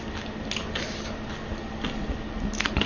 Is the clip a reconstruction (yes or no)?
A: no